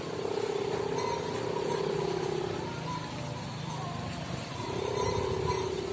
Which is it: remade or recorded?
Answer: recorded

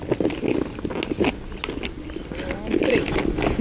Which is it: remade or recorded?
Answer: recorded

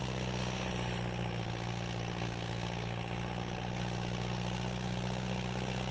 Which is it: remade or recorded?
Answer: recorded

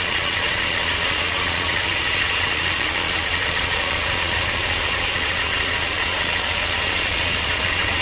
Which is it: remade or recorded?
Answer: remade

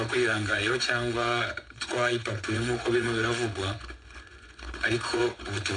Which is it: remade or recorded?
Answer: remade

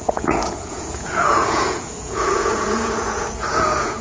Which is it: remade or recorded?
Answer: remade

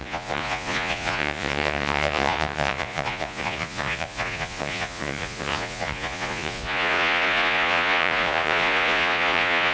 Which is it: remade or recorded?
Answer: remade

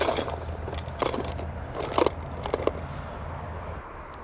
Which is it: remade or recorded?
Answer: recorded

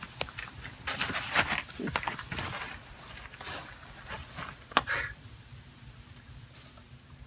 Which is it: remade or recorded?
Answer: recorded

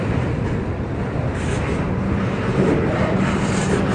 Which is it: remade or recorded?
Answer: recorded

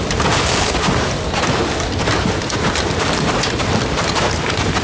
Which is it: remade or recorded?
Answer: recorded